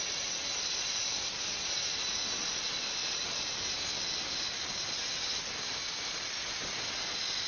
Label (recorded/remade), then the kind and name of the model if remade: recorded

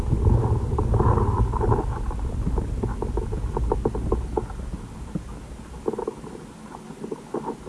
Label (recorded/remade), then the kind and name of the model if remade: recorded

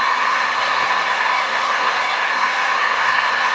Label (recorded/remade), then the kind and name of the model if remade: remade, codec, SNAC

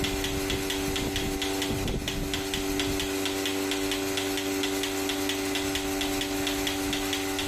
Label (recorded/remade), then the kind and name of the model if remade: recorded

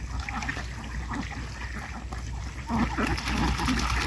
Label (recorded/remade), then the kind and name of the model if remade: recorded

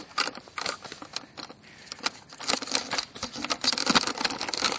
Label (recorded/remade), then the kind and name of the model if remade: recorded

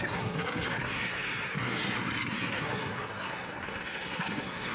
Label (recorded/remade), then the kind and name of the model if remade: remade, codec, SNAC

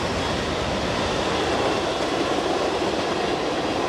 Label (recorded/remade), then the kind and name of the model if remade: recorded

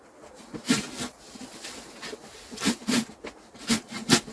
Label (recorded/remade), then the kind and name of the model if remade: recorded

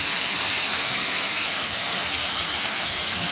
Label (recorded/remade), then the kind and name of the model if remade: remade, codec, SNAC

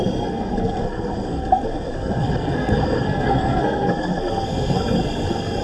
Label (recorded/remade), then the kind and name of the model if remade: remade, codec, SNAC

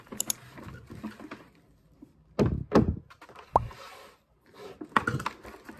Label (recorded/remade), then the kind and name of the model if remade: recorded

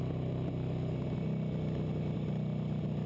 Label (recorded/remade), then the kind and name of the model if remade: recorded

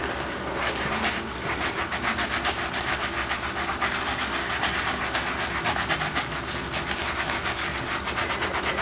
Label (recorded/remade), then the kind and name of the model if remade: recorded